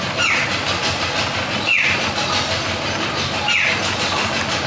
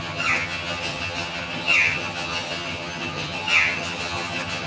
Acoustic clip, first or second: first